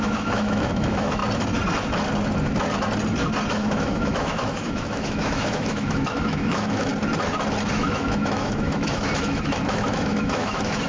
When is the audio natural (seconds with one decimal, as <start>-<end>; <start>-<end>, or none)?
1.2-3.5; 6.9-7.7